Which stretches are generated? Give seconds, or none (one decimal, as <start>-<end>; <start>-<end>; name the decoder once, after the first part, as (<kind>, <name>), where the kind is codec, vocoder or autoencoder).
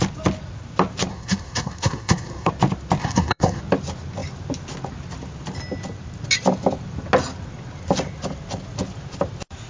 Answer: 1.1-2.5 (codec, SNAC); 3.0-3.6